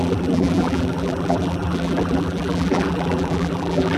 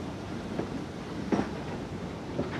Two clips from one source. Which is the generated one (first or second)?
first